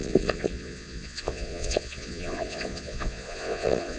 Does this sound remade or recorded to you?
remade